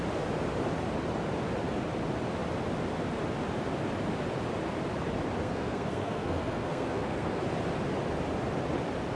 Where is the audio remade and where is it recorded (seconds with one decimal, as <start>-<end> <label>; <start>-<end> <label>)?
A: 0.0-5.4 recorded; 5.4-7.4 remade; 7.4-9.2 recorded